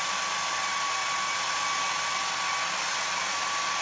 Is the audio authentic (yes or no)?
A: yes